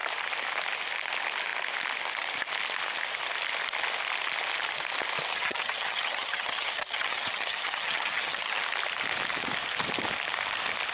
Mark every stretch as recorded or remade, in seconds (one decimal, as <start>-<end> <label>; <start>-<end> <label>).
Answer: 0.0-5.3 recorded; 5.3-8.6 remade; 8.6-10.9 recorded

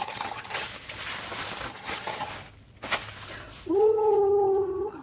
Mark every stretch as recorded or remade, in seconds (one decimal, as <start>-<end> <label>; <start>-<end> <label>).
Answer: 0.0-0.7 remade; 0.7-1.7 recorded; 1.7-2.3 remade; 2.3-3.7 recorded; 3.7-5.0 remade

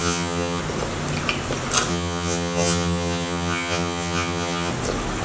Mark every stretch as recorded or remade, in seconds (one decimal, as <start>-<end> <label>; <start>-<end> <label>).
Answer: 0.0-0.6 remade; 0.6-1.9 recorded; 1.9-4.7 remade; 4.7-5.2 recorded